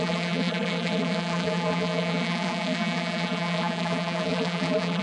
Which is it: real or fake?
fake